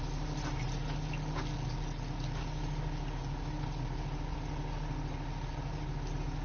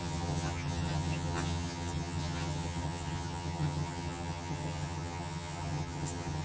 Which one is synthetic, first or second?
second